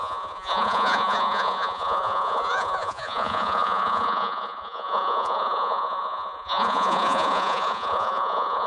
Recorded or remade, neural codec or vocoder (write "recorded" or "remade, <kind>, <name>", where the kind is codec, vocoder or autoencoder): remade, vocoder, Vocos